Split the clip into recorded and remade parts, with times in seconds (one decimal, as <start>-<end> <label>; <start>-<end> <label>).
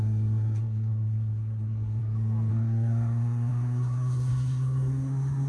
0.0-2.0 remade; 2.0-2.5 recorded; 2.5-5.5 remade